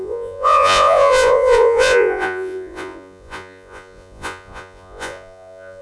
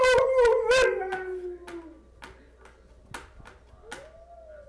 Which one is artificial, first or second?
first